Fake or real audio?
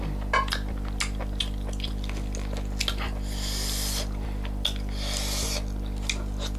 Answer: real